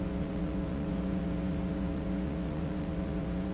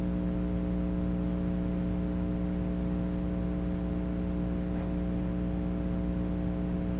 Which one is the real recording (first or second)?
second